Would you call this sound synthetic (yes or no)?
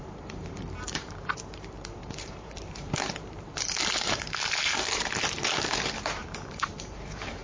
yes